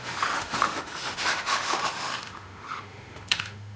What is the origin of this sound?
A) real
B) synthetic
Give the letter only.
B